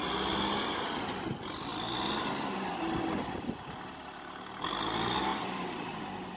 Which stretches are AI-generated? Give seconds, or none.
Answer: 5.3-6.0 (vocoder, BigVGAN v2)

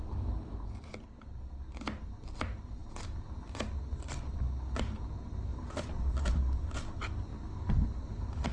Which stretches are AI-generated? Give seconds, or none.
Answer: 5.5-6.3 (vocoder, BigVGAN v2)

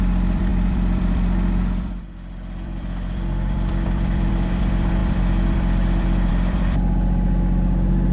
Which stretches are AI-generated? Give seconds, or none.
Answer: 0.0-8.1 (vocoder, BigVGAN v2)

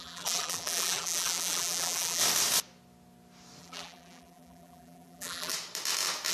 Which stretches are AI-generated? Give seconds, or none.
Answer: 0.0-2.2 (vocoder, BigVGAN v2); 3.6-5.5

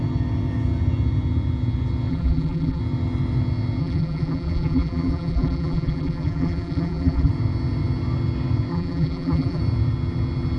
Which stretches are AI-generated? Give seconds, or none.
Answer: 2.1-2.8 (vocoder, BigVGAN v2); 3.8-7.3; 8.7-9.6

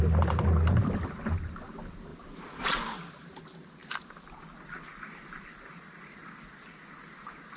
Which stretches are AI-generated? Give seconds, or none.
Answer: none

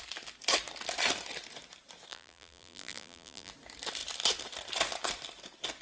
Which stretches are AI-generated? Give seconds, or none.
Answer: 2.1-3.5 (vocoder, BigVGAN v2)

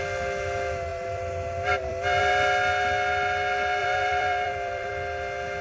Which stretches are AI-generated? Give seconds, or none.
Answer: 0.9-2.3 (vocoder, BigVGAN v2); 3.8-4.9